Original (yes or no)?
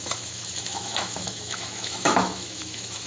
no